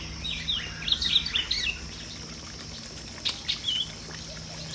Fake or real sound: real